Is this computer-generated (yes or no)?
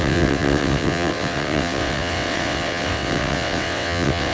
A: yes